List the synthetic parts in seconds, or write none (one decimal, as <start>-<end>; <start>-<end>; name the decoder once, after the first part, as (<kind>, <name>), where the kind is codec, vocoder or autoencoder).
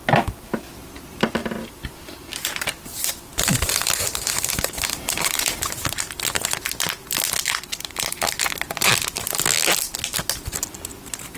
none